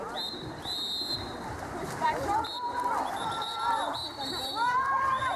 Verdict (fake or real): fake